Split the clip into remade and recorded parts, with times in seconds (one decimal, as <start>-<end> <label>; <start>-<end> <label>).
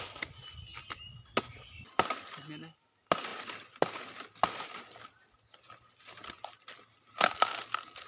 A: 0.0-8.1 recorded